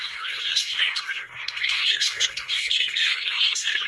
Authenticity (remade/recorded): remade